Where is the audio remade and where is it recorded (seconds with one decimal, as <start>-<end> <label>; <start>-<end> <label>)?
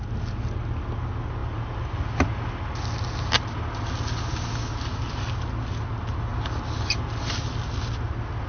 0.0-8.5 recorded